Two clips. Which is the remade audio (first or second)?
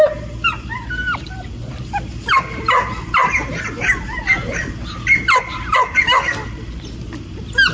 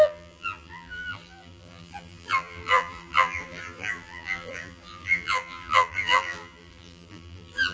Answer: second